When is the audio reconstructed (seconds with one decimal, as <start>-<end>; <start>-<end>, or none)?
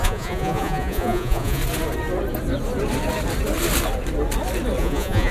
0.0-1.6; 4.8-5.3